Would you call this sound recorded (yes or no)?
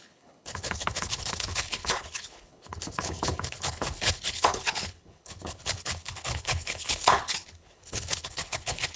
no